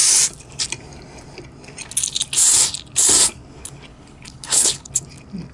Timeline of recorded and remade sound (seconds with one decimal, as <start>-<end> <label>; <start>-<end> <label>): 0.0-3.9 recorded; 3.9-4.9 remade; 4.9-5.5 recorded